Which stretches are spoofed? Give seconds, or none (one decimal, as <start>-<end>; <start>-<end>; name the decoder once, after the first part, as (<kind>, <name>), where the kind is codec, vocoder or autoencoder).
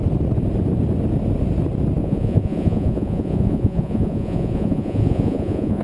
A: 2.0-5.8 (vocoder, Vocos)